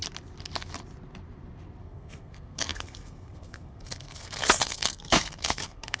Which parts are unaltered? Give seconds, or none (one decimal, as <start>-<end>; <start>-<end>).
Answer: 0.0-1.8